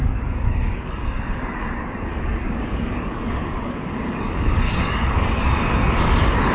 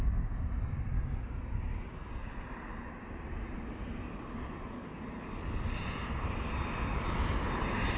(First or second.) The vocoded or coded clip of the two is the first